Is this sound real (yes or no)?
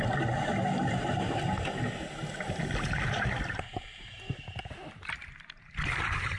yes